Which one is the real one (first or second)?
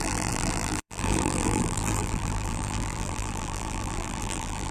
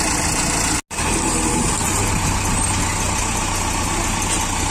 second